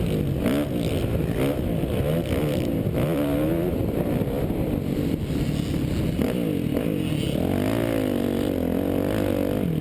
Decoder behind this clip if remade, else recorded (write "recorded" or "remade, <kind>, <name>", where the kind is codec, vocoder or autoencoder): recorded